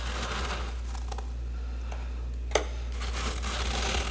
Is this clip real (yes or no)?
yes